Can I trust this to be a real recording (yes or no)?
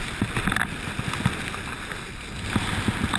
yes